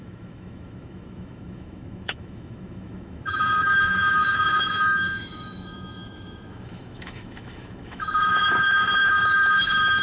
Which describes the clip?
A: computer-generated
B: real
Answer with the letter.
A